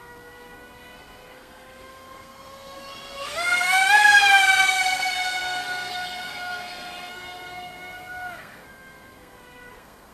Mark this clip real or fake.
fake